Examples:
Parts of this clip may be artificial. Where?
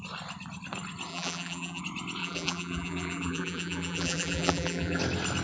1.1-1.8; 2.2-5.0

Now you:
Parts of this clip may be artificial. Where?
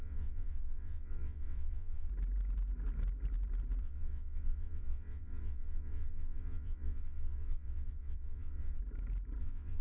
0.0-2.1; 3.8-8.8; 9.4-9.8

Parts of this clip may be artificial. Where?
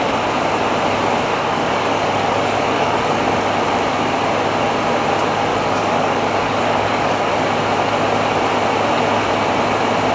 1.3-3.5; 5.5-7.3